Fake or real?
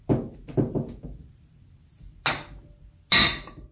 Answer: real